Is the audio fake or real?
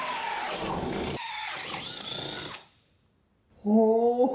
real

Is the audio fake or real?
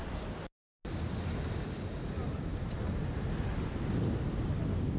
real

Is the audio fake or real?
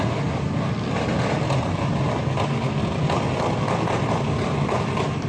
real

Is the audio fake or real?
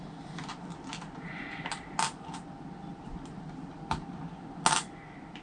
real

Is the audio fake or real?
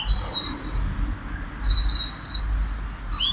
real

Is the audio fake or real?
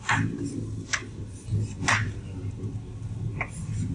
real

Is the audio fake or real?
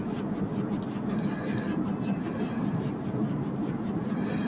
real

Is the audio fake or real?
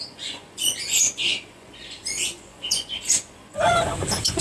fake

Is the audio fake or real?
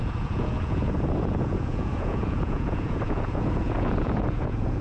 fake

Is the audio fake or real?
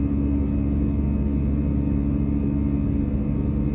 real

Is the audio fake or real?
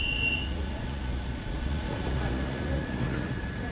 fake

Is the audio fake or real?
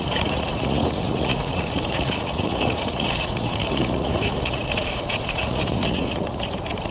fake